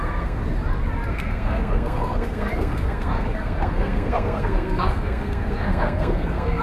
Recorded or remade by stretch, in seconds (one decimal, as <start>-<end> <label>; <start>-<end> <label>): 0.0-0.4 remade; 0.4-1.1 recorded; 1.1-6.6 remade